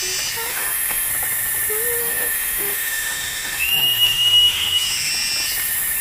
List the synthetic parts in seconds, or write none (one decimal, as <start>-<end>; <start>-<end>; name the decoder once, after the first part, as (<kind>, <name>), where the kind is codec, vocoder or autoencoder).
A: 0.5-1.1 (autoencoder, DAC-VAE); 2.0-5.1